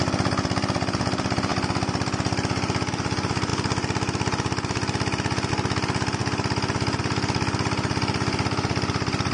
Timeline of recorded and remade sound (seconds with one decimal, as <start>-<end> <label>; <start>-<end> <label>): 0.0-3.5 remade; 3.5-5.5 recorded; 5.5-6.2 remade; 6.2-7.0 recorded; 7.0-9.3 remade